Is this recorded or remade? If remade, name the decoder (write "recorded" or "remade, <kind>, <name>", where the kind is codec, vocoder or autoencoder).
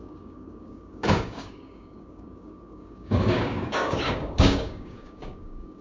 remade, codec, DAC